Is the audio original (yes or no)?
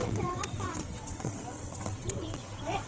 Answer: no